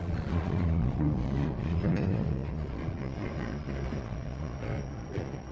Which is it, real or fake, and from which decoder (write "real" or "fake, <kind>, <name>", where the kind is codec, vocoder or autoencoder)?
fake, vocoder, Vocos